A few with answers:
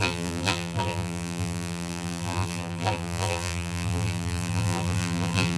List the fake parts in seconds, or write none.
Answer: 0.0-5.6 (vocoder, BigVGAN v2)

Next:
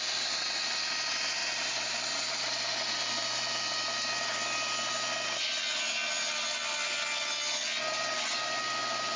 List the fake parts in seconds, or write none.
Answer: 1.4-2.4 (vocoder, BigVGAN v2)

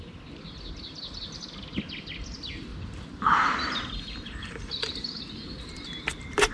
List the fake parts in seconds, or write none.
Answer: 2.7-6.5 (vocoder, BigVGAN v2)